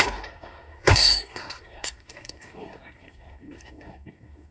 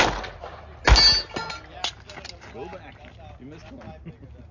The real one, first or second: second